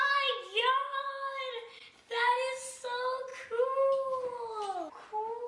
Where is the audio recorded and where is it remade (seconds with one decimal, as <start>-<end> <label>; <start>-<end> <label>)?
0.0-5.5 recorded